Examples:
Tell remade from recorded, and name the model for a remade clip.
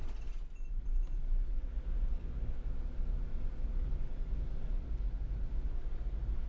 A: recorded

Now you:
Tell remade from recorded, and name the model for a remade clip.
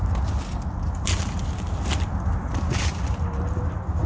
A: recorded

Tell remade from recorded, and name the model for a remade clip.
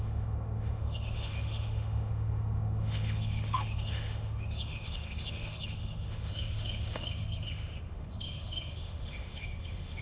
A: remade, autoencoder, DAC-VAE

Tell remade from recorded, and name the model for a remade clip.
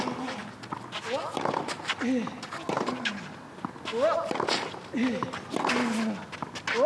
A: recorded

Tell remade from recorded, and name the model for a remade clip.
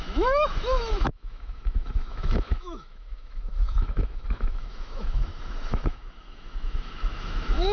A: remade, autoencoder, DAC-VAE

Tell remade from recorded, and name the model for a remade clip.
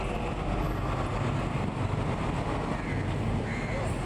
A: recorded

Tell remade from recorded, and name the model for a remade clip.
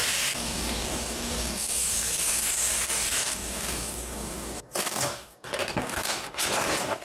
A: remade, codec, DAC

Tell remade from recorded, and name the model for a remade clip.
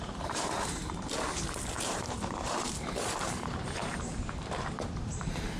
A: remade, vocoder, BigVGAN v2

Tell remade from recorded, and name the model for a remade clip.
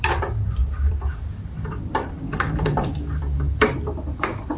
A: remade, vocoder, BigVGAN v2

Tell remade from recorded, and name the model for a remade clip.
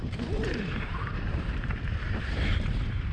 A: remade, vocoder, BigVGAN v2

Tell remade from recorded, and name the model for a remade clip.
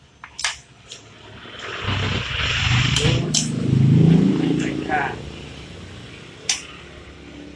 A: recorded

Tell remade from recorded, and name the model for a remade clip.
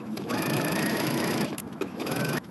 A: remade, autoencoder, DAC-VAE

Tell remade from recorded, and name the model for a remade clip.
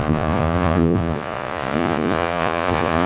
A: remade, vocoder, Vocos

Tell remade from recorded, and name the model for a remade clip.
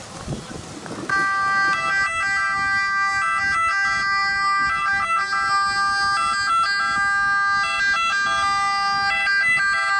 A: recorded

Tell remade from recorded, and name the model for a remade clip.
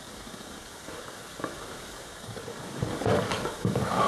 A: remade, codec, DAC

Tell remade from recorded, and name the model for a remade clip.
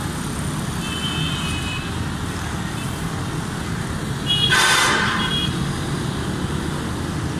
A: recorded